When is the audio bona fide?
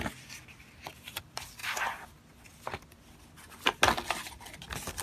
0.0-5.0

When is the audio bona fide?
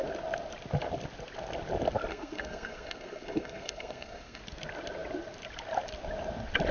0.0-2.1; 4.4-6.7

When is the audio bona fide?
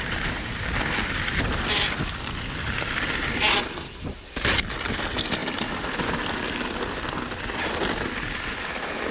0.0-9.1